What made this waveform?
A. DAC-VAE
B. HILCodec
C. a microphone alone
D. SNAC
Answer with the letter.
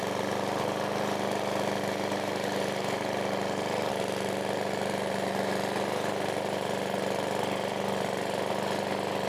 C